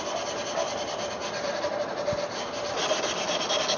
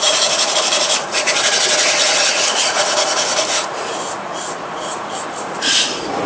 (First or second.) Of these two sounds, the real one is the first